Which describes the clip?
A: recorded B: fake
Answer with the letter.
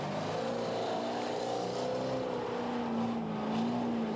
A